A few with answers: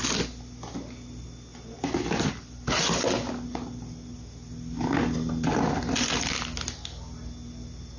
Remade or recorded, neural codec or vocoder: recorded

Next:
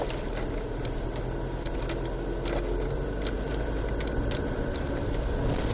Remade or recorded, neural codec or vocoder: recorded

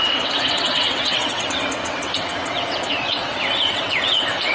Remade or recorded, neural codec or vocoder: remade, vocoder, WaveNeXt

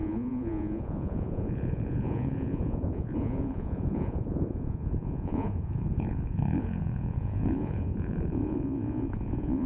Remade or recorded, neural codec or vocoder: remade, vocoder, Vocos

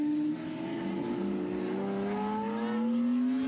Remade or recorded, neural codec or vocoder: recorded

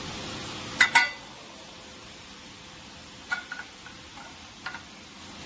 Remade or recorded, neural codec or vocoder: recorded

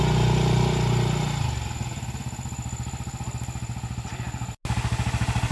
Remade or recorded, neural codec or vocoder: recorded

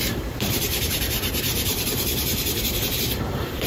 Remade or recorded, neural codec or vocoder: remade, vocoder, BigVGAN v2